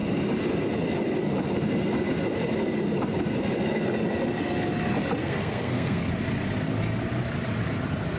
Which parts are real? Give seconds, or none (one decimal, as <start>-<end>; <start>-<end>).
0.0-5.2; 6.0-8.2